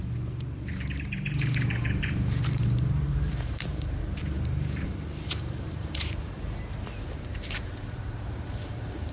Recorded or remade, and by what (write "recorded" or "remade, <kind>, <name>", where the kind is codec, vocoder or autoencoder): remade, vocoder, BigVGAN v2